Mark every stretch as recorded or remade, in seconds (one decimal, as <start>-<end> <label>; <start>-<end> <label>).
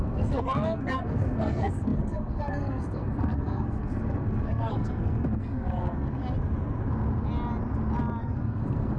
0.0-6.2 remade; 6.2-8.2 recorded; 8.2-9.0 remade